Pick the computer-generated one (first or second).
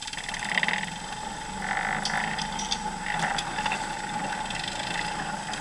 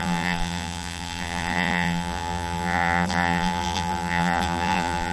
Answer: second